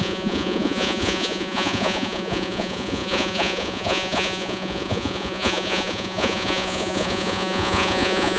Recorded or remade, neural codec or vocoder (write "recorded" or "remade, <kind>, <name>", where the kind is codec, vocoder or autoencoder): remade, vocoder, Vocos